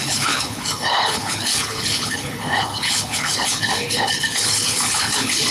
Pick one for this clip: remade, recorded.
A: remade